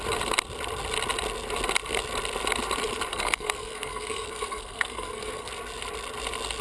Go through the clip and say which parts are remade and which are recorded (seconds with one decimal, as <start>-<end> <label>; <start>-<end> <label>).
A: 0.0-3.1 recorded; 3.1-5.5 remade; 5.5-6.6 recorded